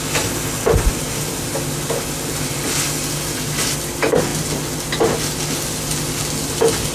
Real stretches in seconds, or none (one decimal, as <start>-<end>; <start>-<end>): 0.0-6.9